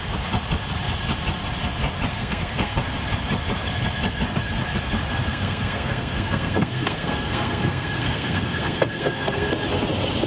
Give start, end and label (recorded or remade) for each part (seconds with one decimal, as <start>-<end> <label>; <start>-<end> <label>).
0.0-2.1 recorded; 2.1-2.8 remade; 2.8-5.3 recorded; 5.3-9.5 remade; 9.5-10.3 recorded